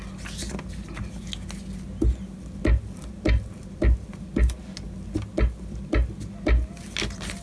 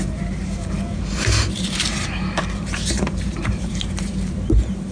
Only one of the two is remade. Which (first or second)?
second